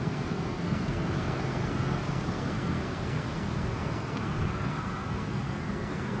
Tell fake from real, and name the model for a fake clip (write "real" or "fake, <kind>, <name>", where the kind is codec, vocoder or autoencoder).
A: fake, codec, SNAC